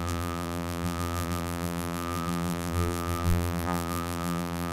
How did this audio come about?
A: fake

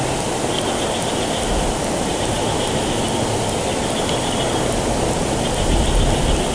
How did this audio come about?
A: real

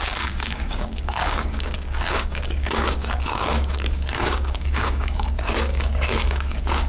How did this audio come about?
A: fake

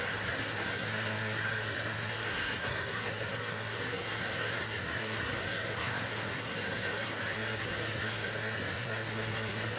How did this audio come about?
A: fake